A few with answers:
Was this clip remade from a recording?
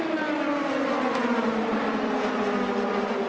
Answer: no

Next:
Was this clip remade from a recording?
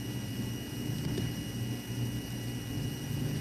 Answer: no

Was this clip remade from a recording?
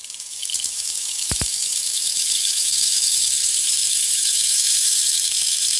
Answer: yes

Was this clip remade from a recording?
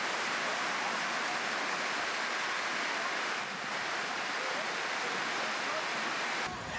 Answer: no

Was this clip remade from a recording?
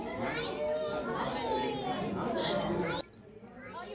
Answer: no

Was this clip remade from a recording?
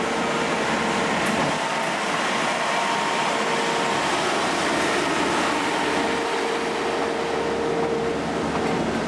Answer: no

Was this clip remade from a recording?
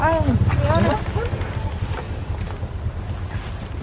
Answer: no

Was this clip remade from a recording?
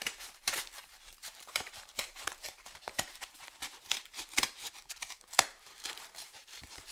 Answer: yes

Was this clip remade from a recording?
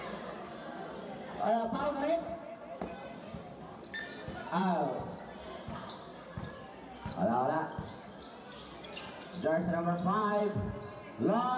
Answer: yes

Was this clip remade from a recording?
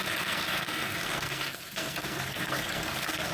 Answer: yes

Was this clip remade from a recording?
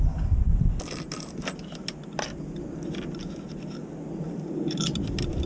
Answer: no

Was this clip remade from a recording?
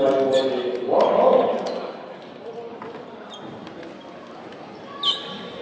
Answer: no